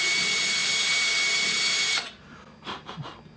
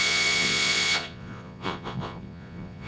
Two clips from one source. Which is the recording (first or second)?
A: first